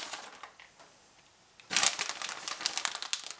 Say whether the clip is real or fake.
real